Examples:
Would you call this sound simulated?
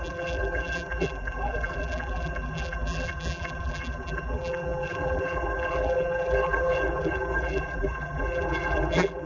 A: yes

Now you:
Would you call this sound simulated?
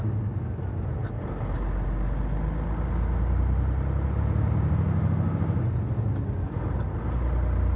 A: no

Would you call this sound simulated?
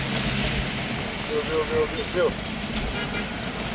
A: no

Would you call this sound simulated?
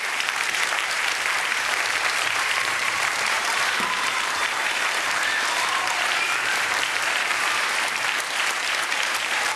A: yes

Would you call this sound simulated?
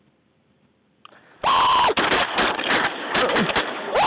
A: yes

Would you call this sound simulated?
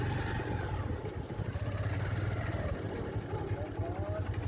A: no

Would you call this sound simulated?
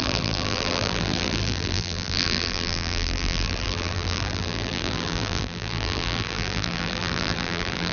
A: yes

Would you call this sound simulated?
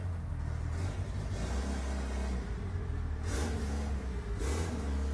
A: no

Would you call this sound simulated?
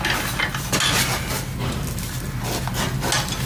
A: no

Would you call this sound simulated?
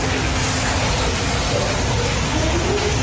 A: no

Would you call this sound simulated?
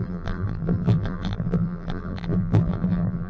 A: yes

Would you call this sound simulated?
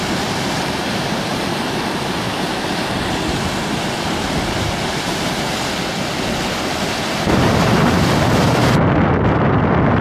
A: no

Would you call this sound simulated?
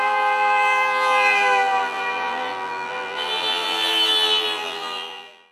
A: yes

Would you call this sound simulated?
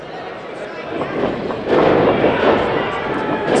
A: no